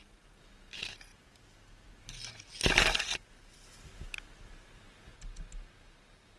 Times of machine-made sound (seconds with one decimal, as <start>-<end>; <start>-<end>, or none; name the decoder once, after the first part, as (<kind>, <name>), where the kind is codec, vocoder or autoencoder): none